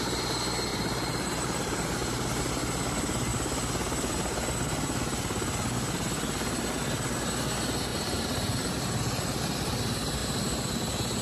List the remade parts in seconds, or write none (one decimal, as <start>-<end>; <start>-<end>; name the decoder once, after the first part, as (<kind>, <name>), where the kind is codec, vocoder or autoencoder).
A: 0.7-2.4 (vocoder, BigVGAN v2); 7.9-9.4